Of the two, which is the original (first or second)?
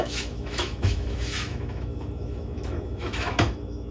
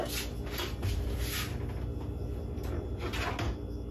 second